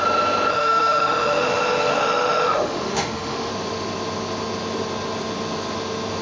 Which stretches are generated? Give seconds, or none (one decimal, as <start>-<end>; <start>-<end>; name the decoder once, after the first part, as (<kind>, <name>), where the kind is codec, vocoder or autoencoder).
0.5-3.5 (autoencoder, DAC-VAE)